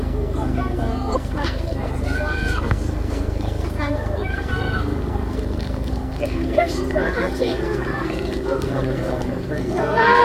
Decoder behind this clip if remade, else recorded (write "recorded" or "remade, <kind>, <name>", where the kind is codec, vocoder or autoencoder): remade, codec, SNAC